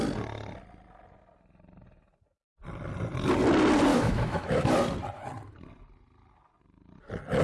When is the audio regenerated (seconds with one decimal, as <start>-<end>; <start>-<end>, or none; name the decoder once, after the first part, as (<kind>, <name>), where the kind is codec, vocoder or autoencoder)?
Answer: 3.9-4.7 (autoencoder, DAC-VAE)